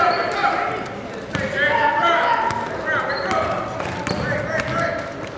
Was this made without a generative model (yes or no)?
yes